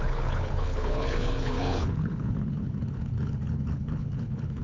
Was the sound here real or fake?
fake